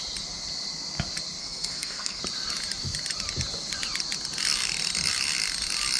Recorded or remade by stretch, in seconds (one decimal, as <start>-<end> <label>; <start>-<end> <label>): 0.0-1.4 recorded; 1.4-2.2 remade; 2.2-6.0 recorded